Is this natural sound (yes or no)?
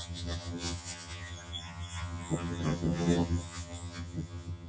no